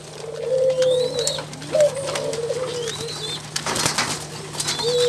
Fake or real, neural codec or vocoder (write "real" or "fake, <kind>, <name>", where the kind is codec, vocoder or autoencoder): real